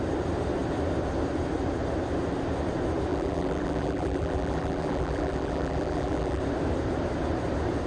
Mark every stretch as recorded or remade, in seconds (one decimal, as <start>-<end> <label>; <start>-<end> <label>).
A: 0.0-3.1 recorded; 3.1-6.4 remade; 6.4-7.9 recorded